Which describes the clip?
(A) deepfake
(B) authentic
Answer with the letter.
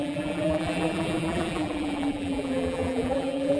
A